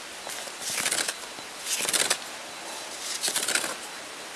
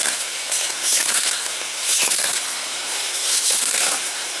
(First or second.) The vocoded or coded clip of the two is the second